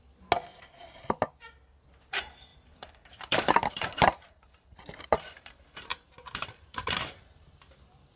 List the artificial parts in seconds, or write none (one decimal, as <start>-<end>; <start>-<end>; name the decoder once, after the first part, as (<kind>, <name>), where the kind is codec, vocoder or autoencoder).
0.5-1.2 (vocoder, BigVGAN v2); 2.5-5.5; 5.9-7.7